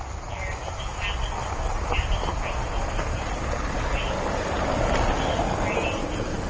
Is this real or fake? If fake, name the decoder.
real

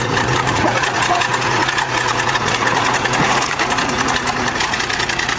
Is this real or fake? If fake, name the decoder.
fake, vocoder, Vocos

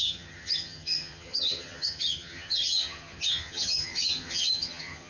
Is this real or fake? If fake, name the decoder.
fake, vocoder, HiFi-GAN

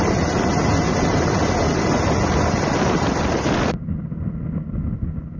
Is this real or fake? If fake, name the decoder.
real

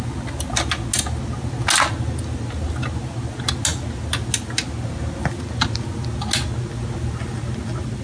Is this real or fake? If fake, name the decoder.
real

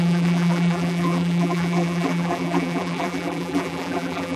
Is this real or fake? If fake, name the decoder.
fake, vocoder, BigVGAN v2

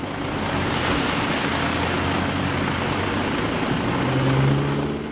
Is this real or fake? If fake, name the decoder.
real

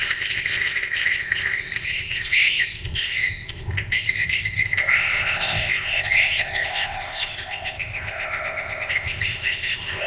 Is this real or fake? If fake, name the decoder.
fake, codec, ZipCodec